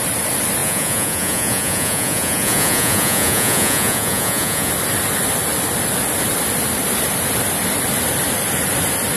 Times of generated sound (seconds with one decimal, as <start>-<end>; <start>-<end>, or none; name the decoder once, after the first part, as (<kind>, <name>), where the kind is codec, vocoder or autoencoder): 0.6-4.7 (vocoder, Vocos)